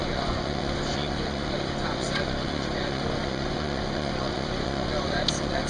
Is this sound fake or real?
fake